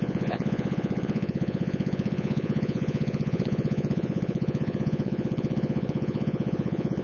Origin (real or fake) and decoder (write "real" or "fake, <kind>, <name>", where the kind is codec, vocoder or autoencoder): fake, vocoder, Vocos